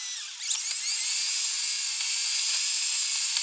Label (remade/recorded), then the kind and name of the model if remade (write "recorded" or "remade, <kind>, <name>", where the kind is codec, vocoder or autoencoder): recorded